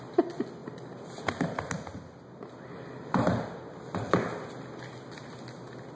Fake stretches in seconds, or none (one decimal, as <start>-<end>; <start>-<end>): none